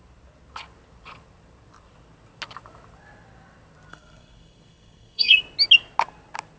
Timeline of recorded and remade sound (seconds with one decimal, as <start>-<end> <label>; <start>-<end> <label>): 0.0-3.9 recorded; 3.9-5.4 remade; 5.4-6.6 recorded